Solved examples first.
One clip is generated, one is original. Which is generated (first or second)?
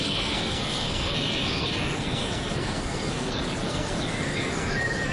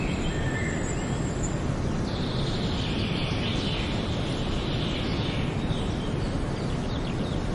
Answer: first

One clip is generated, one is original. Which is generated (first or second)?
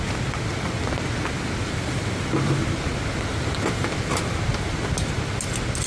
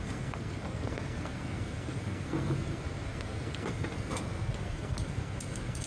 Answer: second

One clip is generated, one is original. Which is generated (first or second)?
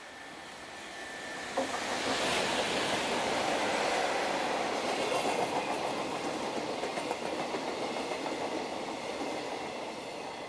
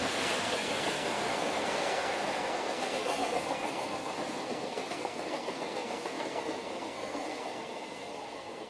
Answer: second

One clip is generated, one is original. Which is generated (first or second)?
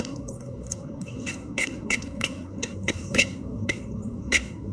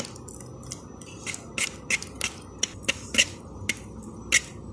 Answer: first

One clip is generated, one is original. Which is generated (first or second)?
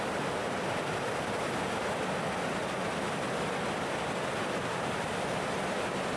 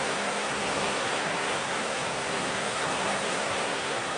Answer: second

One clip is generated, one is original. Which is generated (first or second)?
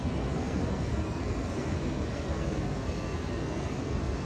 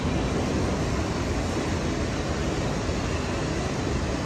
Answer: first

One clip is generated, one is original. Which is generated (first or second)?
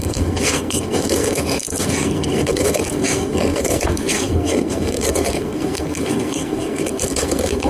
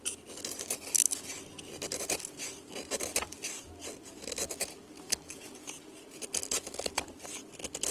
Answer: first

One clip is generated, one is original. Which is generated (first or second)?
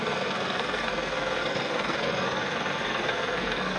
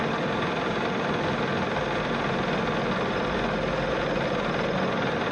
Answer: first